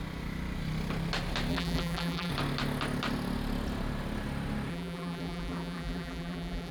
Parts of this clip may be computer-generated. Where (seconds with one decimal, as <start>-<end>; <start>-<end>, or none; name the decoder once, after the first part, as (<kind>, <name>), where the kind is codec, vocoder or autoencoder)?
1.5-2.3 (vocoder, BigVGAN v2); 4.7-6.7

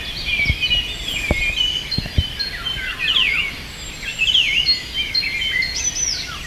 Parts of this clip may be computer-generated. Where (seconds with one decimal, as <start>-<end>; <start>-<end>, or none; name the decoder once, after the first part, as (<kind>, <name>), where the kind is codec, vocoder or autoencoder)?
4.1-5.1 (vocoder, BigVGAN v2)

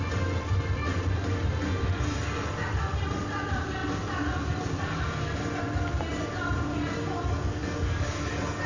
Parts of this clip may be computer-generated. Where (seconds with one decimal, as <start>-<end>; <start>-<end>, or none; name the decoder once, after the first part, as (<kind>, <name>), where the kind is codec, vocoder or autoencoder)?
none

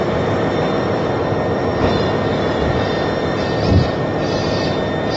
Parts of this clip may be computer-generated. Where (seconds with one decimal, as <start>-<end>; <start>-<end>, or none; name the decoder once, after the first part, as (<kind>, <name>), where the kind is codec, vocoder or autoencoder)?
none

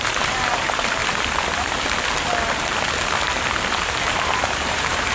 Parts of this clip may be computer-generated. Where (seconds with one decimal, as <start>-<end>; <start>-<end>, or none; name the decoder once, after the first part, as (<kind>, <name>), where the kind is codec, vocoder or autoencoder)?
0.0-1.0 (vocoder, BigVGAN v2); 4.1-5.1

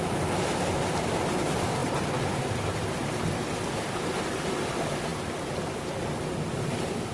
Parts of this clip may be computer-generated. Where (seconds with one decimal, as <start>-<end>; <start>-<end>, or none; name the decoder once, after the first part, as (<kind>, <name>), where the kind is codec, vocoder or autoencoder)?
5.1-5.7 (vocoder, BigVGAN v2)

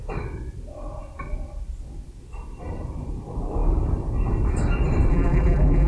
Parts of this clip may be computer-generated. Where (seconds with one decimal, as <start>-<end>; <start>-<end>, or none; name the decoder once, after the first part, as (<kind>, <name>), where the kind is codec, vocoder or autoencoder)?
5.1-5.9 (vocoder, BigVGAN v2)